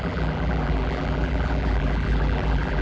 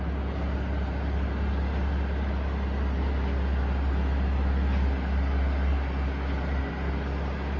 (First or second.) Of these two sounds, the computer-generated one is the first